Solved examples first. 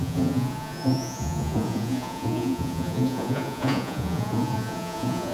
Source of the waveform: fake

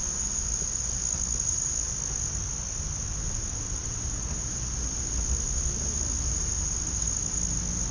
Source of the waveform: real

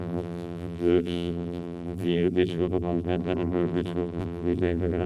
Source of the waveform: fake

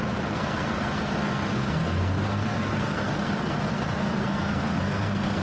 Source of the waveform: fake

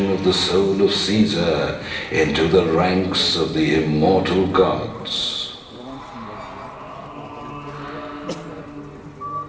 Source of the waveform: real